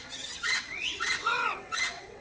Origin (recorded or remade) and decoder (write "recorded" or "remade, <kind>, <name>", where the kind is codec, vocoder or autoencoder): remade, vocoder, WaveNeXt